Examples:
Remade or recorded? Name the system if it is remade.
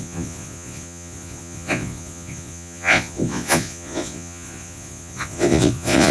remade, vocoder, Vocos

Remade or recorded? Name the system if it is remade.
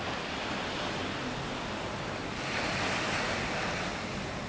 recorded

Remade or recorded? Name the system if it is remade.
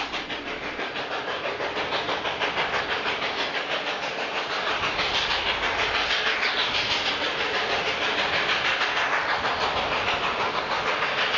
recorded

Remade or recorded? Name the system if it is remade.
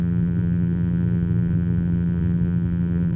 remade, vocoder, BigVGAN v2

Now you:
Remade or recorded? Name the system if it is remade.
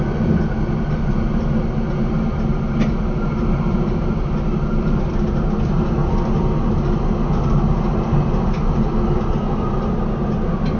recorded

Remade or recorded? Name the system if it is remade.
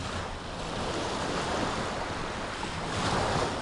recorded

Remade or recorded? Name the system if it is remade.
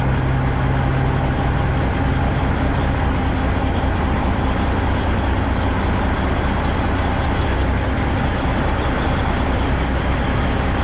recorded